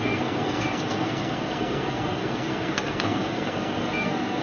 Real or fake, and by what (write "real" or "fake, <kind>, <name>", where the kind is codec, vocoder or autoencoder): fake, codec, SNAC